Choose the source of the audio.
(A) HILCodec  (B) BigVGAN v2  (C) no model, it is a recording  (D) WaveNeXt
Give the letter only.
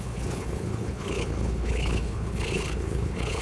A